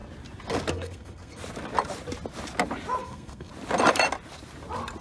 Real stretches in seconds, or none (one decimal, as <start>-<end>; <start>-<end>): 0.0-0.7; 1.4-3.0; 3.5-5.0